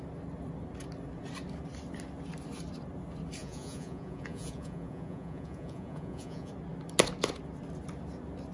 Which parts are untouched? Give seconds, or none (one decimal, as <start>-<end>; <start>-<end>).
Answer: 0.0-3.4; 6.5-8.5